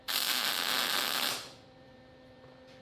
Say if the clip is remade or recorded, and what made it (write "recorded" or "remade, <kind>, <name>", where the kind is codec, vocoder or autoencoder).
remade, vocoder, BigVGAN v2